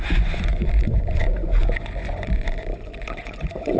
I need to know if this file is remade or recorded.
remade